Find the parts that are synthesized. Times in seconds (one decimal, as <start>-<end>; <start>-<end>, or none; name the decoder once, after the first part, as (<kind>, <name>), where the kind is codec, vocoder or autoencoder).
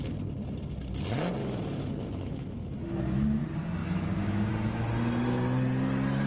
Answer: 1.4-3.4 (autoencoder, DAC-VAE); 3.8-4.5